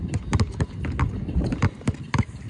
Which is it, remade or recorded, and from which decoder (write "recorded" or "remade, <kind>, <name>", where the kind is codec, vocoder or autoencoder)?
recorded